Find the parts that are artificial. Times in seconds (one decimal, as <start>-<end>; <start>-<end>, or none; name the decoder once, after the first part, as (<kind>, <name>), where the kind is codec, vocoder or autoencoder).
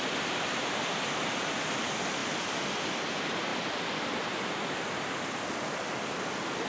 0.0-2.2 (vocoder, BigVGAN v2); 3.0-3.5